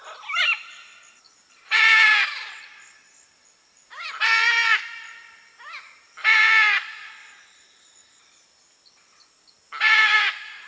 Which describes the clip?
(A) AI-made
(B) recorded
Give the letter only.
B